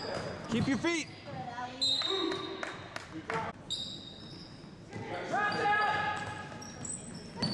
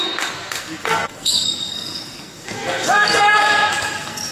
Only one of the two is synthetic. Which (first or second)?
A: second